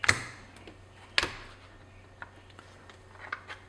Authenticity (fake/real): real